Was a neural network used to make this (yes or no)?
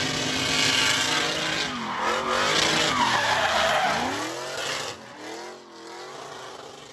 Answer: no